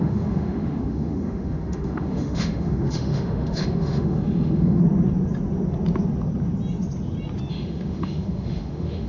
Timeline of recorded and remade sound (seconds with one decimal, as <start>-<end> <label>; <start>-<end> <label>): 0.0-4.8 remade; 4.8-7.5 recorded; 7.5-9.1 remade